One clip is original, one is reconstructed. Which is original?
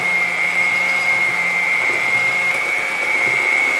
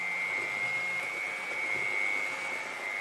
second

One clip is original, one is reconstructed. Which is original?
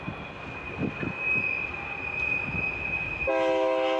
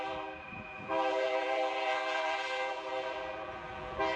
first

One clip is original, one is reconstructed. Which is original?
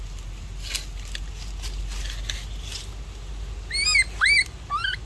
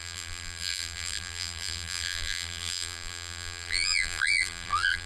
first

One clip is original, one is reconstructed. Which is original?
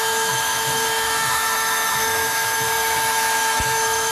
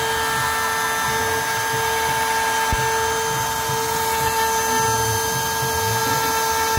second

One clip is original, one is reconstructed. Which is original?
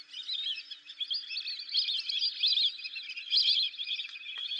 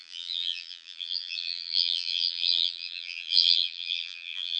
first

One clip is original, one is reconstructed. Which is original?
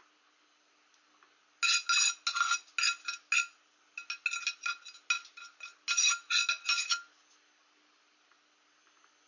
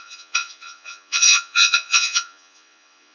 first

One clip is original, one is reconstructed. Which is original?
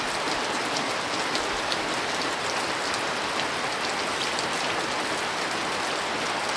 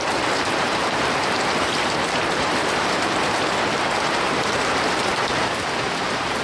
first